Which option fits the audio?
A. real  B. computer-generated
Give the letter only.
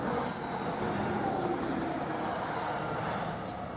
A